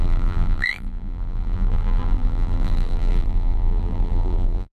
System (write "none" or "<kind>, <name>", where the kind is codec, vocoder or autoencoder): vocoder, BigVGAN v2